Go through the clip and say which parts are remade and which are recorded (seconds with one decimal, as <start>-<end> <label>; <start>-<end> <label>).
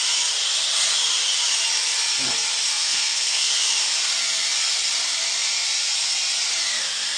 0.0-2.7 recorded; 2.7-3.5 remade; 3.5-7.2 recorded